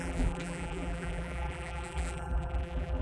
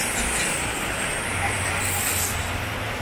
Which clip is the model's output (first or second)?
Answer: first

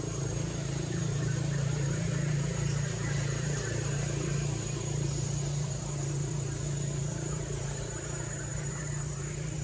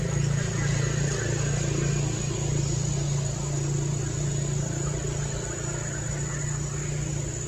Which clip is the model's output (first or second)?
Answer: first